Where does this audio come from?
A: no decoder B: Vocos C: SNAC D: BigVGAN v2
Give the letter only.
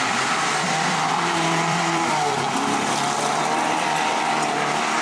D